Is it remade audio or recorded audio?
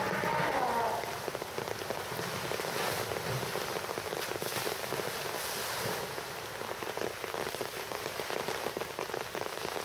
recorded